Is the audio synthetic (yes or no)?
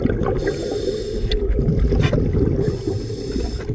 no